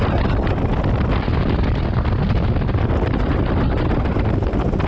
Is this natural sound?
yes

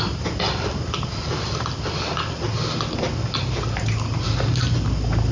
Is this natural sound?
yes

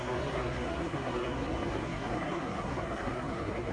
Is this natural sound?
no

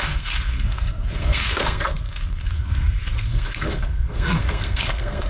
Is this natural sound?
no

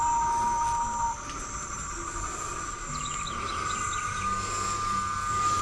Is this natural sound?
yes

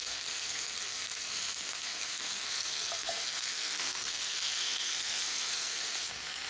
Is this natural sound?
no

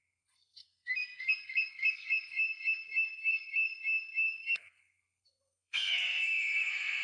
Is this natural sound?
no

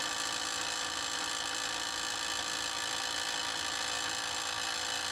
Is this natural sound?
yes